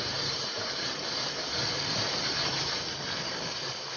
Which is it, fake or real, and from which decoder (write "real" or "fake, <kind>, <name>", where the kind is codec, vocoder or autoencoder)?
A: fake, vocoder, BigVGAN v2